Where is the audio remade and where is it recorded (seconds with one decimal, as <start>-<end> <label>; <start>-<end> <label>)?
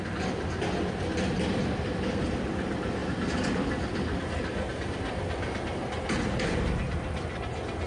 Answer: 0.0-7.9 recorded